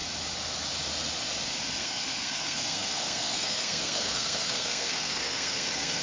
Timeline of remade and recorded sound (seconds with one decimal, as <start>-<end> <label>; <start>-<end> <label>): 0.0-1.8 recorded; 1.8-6.0 remade